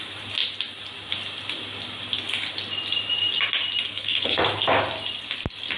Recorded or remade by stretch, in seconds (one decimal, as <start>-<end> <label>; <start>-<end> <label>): 0.0-3.9 recorded; 3.9-4.4 remade; 4.4-5.8 recorded